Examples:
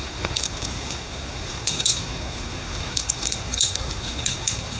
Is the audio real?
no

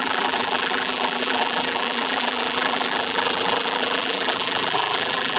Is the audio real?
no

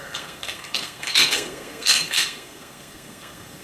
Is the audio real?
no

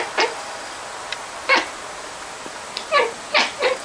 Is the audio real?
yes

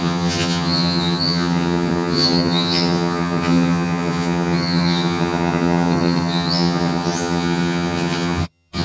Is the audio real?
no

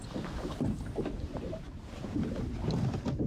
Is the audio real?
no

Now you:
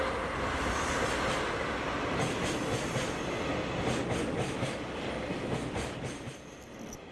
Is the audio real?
yes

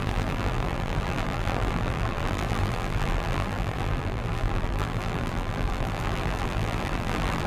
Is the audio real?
no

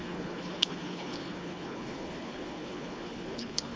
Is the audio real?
no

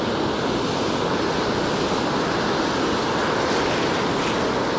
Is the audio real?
yes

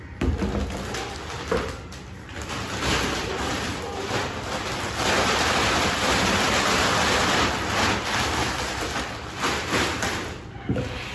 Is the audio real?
yes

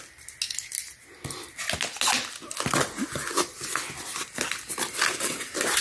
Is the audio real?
yes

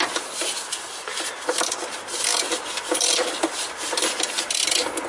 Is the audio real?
yes